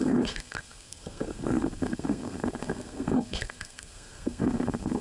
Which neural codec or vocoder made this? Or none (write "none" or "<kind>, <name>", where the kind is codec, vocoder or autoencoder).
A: codec, SNAC